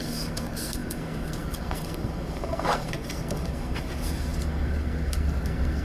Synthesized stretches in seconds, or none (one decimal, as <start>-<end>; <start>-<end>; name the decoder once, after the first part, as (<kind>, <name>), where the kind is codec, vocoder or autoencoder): 0.0-5.8 (codec, SNAC)